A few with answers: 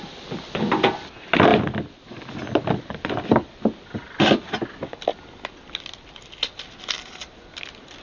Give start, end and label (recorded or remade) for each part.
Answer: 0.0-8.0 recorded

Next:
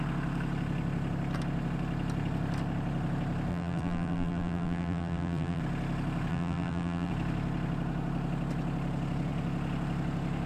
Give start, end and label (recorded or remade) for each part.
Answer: 0.0-3.5 recorded; 3.5-5.6 remade; 5.6-6.3 recorded; 6.3-7.1 remade; 7.1-10.5 recorded

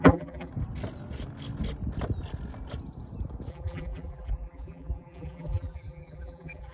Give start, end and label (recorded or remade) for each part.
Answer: 0.0-0.5 remade; 0.5-3.5 recorded; 3.5-6.7 remade

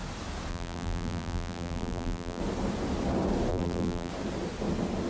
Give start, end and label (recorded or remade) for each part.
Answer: 0.0-0.5 recorded; 0.5-2.4 remade; 2.4-3.5 recorded; 3.5-4.1 remade; 4.1-5.1 recorded